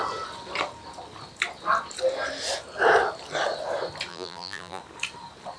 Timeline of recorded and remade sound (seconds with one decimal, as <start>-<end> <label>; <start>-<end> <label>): 0.0-4.1 recorded; 4.1-4.8 remade; 4.8-5.6 recorded